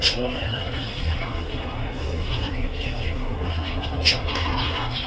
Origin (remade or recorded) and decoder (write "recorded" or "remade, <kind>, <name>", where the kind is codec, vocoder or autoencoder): remade, codec, SNAC